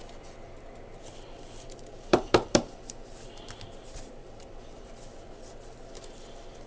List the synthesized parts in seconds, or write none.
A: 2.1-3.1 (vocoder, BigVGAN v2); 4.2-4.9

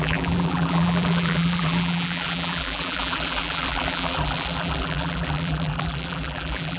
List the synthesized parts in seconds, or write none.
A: 0.0-6.8 (vocoder, BigVGAN v2)

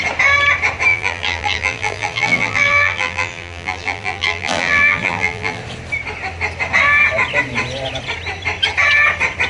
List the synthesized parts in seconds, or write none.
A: 0.9-5.6 (vocoder, BigVGAN v2)

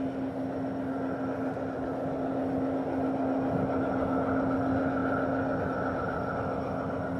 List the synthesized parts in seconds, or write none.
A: none

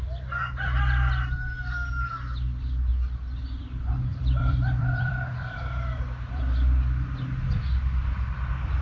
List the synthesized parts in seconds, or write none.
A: 4.1-6.4 (vocoder, BigVGAN v2)

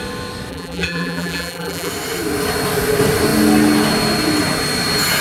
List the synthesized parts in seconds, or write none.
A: 0.5-1.9 (vocoder, BigVGAN v2)

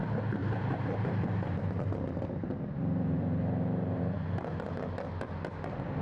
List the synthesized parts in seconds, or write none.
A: 0.4-4.0 (vocoder, BigVGAN v2)

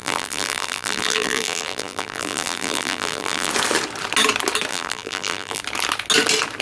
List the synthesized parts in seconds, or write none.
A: 0.0-3.5 (vocoder, BigVGAN v2); 4.7-5.6